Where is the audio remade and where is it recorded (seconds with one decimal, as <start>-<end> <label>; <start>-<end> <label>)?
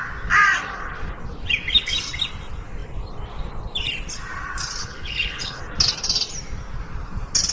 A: 0.0-4.8 recorded; 4.8-5.6 remade; 5.6-7.5 recorded